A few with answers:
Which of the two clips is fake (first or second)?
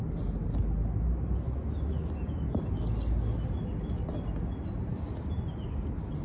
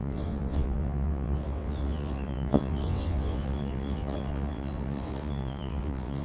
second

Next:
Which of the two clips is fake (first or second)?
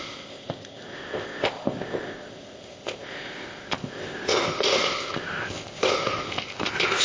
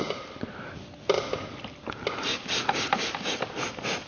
first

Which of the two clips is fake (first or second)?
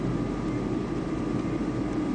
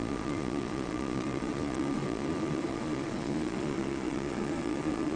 second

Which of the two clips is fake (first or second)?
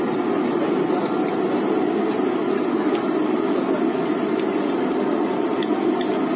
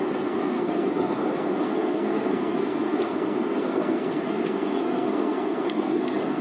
second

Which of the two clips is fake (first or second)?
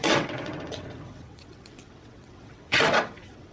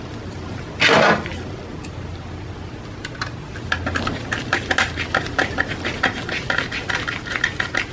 first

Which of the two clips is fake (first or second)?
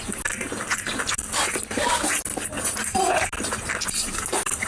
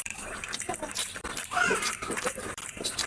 second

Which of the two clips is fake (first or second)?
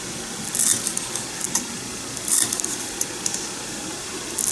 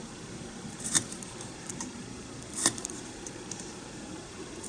second